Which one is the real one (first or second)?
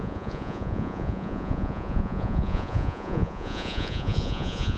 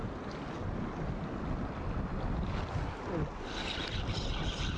second